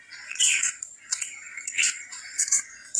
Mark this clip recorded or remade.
remade